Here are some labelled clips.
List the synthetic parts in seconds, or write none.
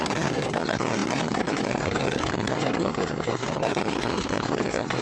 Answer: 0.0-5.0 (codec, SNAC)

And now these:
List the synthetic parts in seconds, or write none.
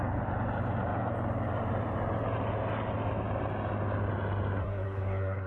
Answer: 4.6-5.5 (codec, SNAC)